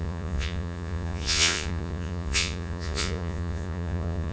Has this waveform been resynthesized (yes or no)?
yes